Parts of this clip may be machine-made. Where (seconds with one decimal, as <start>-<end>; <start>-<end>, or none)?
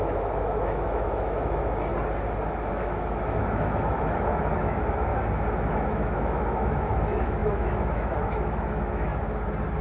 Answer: 0.0-1.9; 2.7-5.1; 5.7-9.1